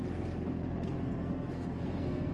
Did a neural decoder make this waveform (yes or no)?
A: yes